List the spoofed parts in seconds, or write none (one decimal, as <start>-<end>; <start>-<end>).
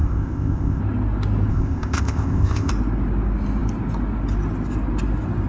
0.0-0.8; 1.5-2.7